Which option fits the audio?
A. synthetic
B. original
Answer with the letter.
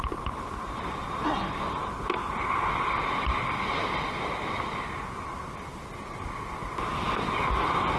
B